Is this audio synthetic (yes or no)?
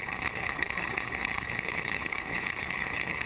yes